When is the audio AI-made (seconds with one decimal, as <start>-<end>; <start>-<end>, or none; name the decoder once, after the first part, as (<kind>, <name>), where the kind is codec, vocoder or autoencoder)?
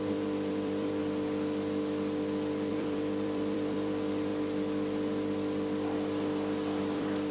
0.0-1.0 (vocoder, BigVGAN v2); 2.7-4.3; 6.8-7.3